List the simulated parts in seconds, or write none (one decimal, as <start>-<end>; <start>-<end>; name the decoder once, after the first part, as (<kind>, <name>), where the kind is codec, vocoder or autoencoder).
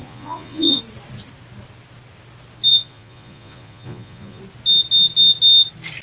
0.0-0.8 (vocoder, Vocos); 2.7-4.4